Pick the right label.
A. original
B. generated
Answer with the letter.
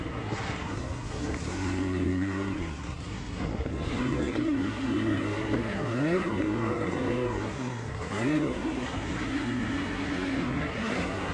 B